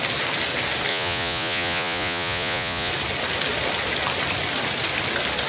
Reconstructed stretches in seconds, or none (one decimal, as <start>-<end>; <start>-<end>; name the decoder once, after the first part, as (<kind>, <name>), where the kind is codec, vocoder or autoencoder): 0.9-2.9 (vocoder, Vocos)